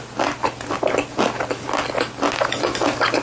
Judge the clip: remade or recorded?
recorded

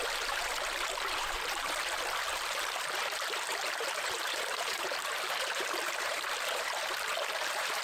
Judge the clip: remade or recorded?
remade